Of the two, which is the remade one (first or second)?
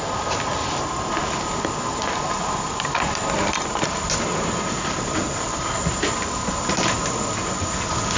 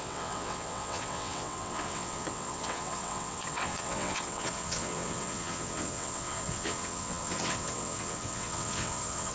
second